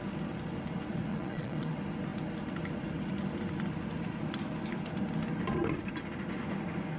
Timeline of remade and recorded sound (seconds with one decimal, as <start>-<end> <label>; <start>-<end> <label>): 0.0-1.1 recorded; 1.1-1.7 remade; 1.7-7.0 recorded